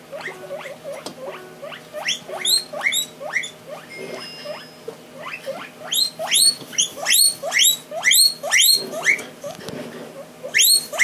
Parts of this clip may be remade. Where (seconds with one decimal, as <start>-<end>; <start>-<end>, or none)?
none